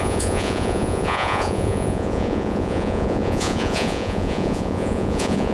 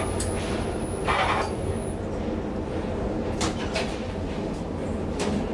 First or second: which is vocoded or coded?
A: first